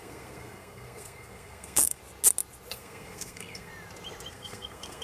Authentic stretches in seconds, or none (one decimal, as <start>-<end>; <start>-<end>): 2.0-2.7; 3.7-4.3